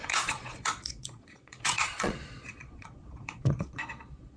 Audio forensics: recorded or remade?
remade